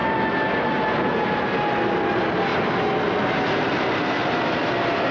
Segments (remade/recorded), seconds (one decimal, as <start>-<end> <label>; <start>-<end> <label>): 0.0-5.1 recorded